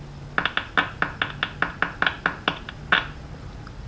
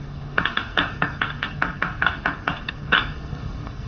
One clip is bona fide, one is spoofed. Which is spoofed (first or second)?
second